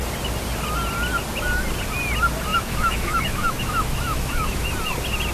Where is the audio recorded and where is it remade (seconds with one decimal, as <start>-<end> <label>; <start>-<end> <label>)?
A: 0.0-2.5 recorded; 2.5-4.7 remade; 4.7-5.3 recorded